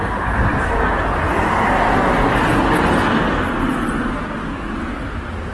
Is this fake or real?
real